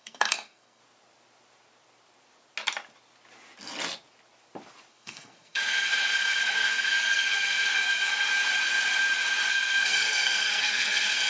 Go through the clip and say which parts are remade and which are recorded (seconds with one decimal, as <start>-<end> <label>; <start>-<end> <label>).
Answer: 0.0-0.8 remade; 0.8-4.9 recorded; 4.9-8.3 remade; 8.3-9.5 recorded; 9.5-11.3 remade